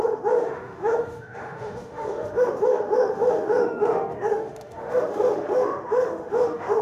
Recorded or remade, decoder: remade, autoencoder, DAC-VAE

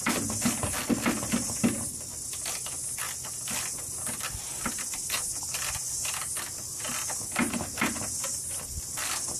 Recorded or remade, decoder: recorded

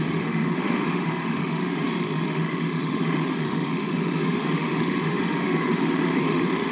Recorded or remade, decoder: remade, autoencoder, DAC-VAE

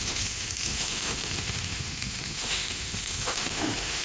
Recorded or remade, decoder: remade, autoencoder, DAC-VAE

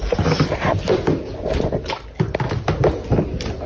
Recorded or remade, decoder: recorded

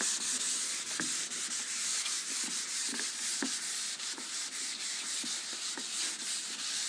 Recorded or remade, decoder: recorded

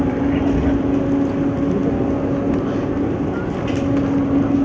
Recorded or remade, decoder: recorded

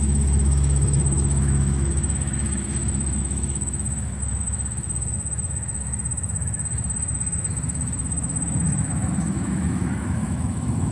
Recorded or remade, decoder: remade, autoencoder, DAC-VAE